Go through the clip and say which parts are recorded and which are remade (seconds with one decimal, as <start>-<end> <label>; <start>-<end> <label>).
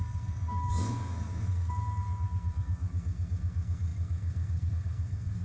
0.0-5.4 remade